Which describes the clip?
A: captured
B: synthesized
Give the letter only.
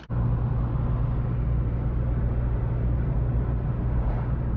A